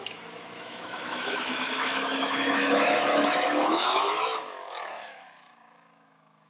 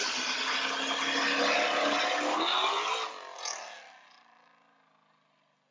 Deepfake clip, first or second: first